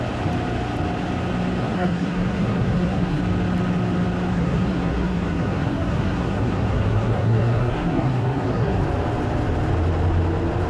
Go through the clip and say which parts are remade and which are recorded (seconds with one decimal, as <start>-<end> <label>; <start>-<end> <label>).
0.0-1.6 recorded; 1.6-3.2 remade; 3.2-4.3 recorded; 4.3-8.8 remade; 8.8-10.7 recorded

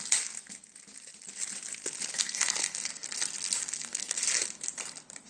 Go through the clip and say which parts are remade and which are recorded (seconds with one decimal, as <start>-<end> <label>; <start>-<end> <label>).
0.0-2.1 recorded; 2.1-3.1 remade; 3.1-3.6 recorded; 3.6-4.2 remade; 4.2-5.3 recorded